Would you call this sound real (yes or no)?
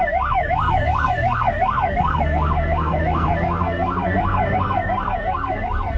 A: no